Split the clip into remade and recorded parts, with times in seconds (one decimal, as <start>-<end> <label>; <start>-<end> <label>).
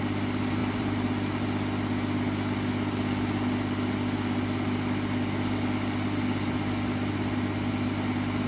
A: 0.0-0.6 recorded; 0.6-1.4 remade; 1.4-8.5 recorded